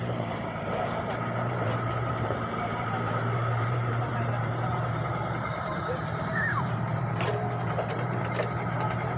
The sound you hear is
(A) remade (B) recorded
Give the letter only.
A